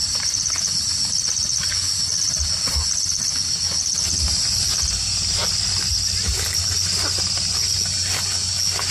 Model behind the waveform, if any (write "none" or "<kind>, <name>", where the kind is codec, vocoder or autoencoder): none